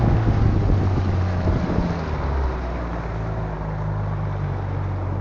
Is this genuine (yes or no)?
yes